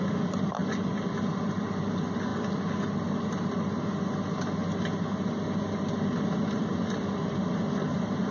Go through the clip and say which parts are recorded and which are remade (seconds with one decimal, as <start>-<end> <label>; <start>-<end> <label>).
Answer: 0.0-8.3 recorded